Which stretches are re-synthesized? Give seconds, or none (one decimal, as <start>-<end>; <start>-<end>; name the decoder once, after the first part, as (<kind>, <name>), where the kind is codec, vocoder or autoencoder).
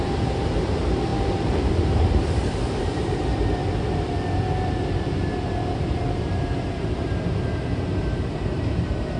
0.0-3.6 (vocoder, BigVGAN v2); 5.8-9.2